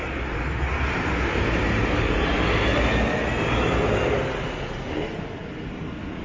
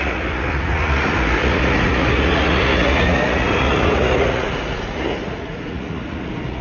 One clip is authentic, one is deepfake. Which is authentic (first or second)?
first